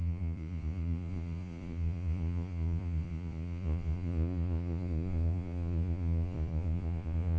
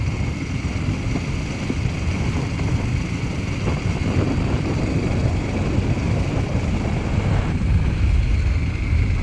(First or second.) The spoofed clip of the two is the first